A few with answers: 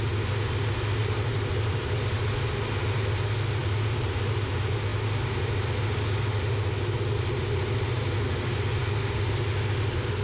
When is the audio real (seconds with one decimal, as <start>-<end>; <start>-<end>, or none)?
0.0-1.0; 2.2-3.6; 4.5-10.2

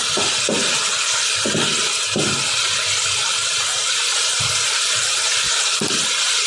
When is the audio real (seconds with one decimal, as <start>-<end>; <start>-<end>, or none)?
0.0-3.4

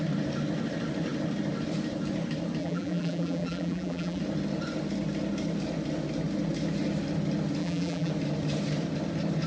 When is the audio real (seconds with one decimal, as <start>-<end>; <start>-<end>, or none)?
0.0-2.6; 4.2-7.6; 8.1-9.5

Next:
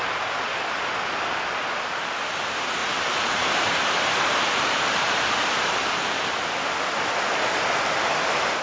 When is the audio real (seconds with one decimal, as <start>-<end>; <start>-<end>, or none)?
0.6-2.8; 4.6-5.4; 6.3-8.6

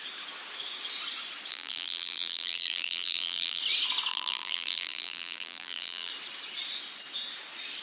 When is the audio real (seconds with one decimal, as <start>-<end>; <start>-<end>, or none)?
0.0-1.5; 3.6-4.1; 6.1-7.8

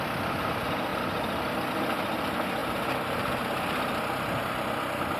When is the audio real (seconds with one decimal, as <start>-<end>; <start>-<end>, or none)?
0.0-5.2